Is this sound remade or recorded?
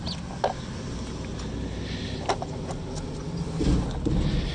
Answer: recorded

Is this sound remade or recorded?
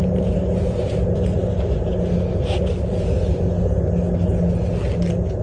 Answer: recorded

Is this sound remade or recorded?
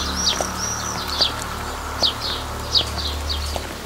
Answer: recorded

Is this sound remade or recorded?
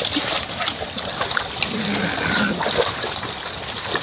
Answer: recorded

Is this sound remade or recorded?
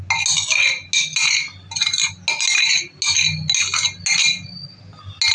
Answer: recorded